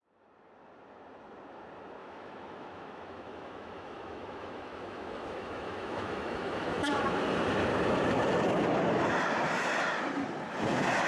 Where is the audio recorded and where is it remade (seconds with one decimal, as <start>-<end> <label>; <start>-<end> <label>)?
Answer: 0.0-2.0 recorded; 2.0-7.0 remade; 7.0-11.1 recorded